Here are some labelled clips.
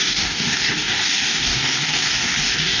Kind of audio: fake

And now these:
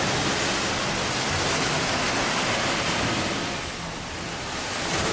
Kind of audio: real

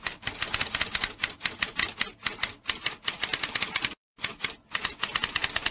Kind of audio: real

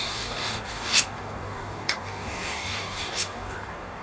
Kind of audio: fake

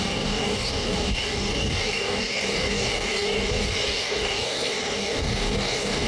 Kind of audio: fake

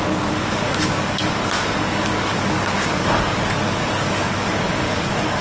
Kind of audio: fake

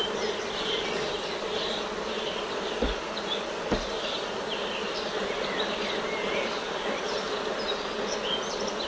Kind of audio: real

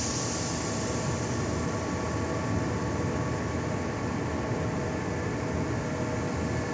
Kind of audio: real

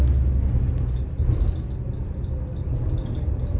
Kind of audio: real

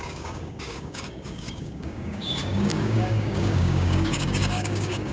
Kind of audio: fake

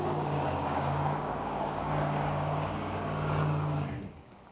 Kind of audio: fake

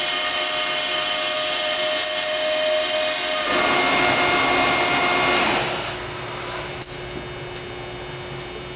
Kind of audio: real